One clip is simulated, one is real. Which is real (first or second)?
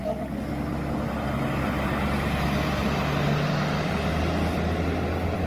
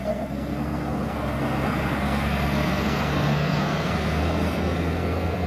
first